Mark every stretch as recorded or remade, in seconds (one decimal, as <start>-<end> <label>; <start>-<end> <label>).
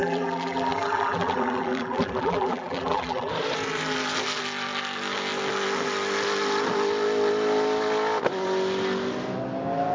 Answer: 0.0-3.3 remade; 3.3-9.9 recorded